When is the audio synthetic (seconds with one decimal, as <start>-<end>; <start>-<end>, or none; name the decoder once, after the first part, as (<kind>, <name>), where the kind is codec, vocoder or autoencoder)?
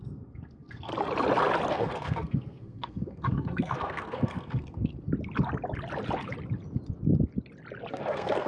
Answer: 0.0-0.9 (codec, SNAC); 1.7-4.9; 7.9-8.5